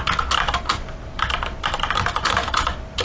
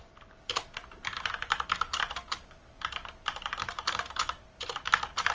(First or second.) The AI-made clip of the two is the second